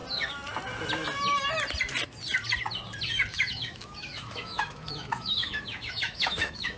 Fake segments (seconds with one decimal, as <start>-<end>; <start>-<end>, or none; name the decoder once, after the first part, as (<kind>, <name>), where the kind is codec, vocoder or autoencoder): 3.3-6.8 (autoencoder, DAC-VAE)